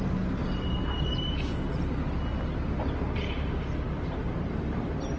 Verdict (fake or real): real